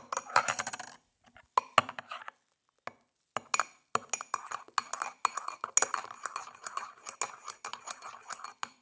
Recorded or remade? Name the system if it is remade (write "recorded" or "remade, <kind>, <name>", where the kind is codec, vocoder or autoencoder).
recorded